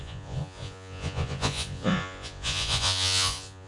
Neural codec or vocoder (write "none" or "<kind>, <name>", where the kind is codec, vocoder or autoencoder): vocoder, Vocos